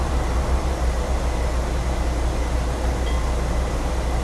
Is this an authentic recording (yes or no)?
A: yes